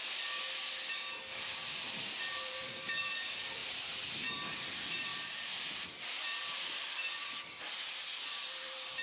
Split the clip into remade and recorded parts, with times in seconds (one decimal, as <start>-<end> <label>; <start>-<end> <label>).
0.0-2.3 recorded; 2.3-9.0 remade